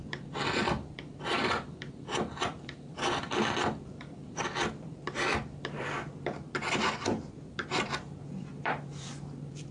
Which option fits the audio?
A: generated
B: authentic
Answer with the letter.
A